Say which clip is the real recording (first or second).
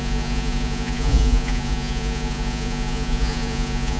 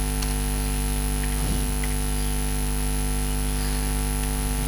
second